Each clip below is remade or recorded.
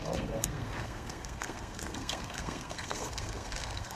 remade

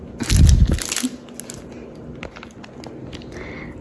recorded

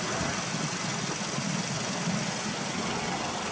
recorded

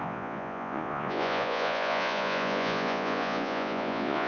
remade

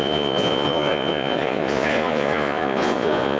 remade